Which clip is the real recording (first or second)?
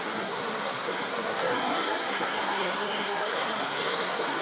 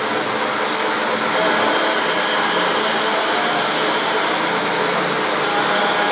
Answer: second